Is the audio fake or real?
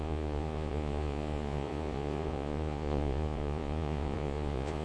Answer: fake